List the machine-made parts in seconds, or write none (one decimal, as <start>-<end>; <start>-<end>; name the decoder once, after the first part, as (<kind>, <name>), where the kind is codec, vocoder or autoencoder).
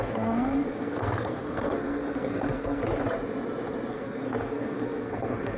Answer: 0.0-2.8 (codec, SNAC); 3.9-5.6